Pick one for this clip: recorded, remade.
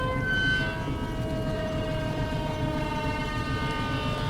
recorded